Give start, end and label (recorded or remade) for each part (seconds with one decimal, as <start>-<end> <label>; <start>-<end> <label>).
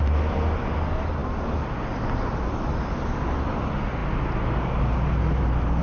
0.0-5.8 recorded